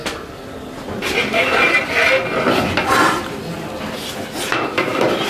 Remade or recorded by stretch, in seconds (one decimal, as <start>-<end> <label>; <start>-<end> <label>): 0.0-5.3 recorded